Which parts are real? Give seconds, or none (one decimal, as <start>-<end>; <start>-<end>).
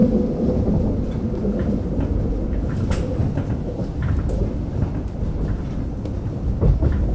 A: 0.0-7.1